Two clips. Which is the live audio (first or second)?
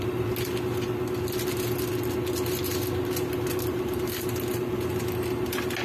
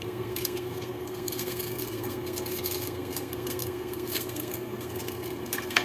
first